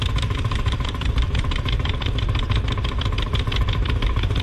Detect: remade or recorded remade